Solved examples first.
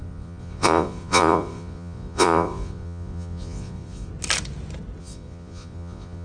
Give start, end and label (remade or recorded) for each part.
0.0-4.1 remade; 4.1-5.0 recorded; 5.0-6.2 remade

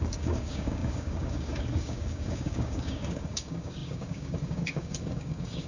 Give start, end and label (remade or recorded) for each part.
0.0-5.7 remade

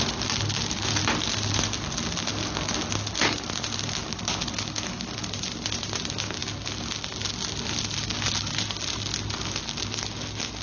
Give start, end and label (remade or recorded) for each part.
0.0-10.6 recorded